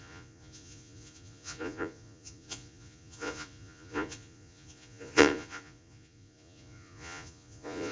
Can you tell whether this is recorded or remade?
remade